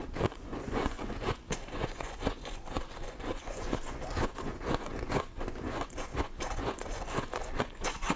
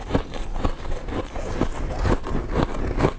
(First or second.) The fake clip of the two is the first